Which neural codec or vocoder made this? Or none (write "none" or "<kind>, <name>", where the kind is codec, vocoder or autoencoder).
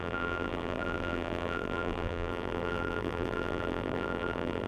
vocoder, BigVGAN v2